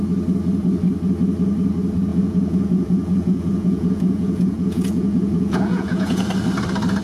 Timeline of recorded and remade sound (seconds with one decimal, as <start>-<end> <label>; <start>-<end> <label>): 0.0-2.1 recorded; 2.1-6.3 remade; 6.3-7.0 recorded